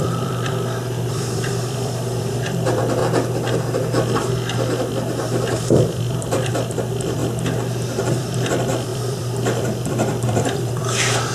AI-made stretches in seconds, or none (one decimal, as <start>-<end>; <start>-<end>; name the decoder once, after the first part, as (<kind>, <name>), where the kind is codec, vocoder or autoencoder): 0.0-3.0 (vocoder, BigVGAN v2); 5.6-7.2; 8.0-11.3